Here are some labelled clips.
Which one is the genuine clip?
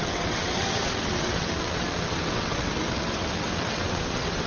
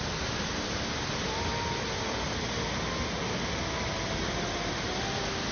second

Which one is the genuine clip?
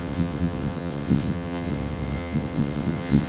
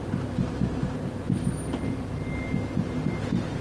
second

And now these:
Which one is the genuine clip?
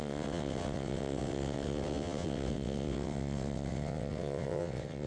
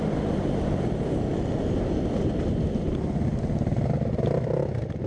second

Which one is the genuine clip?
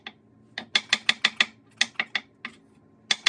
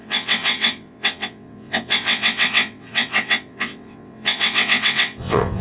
first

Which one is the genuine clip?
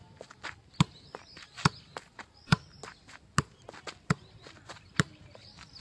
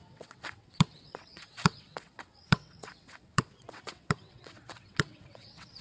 first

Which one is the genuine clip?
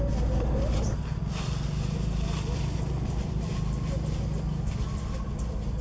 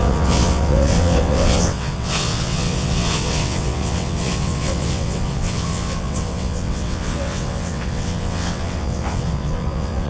first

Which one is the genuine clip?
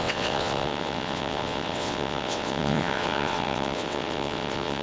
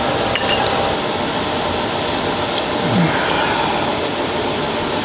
second